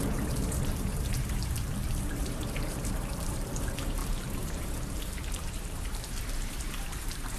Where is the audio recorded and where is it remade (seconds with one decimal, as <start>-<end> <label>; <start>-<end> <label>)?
0.0-7.4 remade